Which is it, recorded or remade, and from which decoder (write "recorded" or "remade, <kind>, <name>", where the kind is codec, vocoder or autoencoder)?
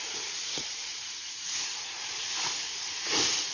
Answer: remade, vocoder, Vocos